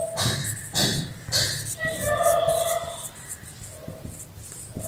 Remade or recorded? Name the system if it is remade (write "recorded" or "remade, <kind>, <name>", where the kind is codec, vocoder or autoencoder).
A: recorded